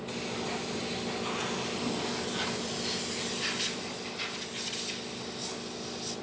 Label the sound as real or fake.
real